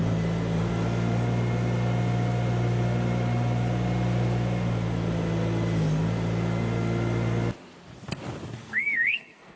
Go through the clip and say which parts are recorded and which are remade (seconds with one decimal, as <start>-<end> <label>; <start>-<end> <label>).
0.0-8.6 recorded; 8.6-9.6 remade